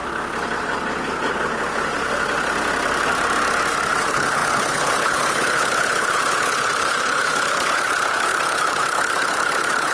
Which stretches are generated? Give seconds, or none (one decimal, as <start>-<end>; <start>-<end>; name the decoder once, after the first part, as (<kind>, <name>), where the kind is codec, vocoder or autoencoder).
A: 4.0-9.9 (codec, HILCodec)